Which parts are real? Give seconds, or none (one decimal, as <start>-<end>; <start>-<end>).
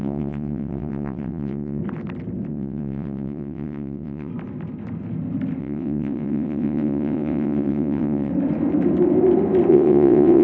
1.8-2.5; 4.3-5.6; 8.3-9.7